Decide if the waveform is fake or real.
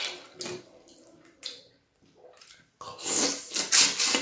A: real